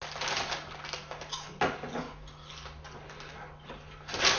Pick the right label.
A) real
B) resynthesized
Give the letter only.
A